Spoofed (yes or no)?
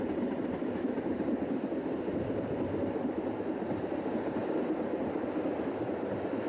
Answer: no